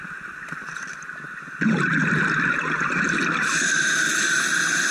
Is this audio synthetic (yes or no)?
yes